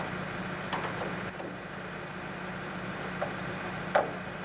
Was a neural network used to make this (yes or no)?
no